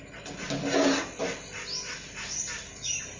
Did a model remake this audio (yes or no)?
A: no